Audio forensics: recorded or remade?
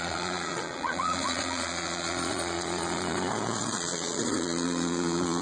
remade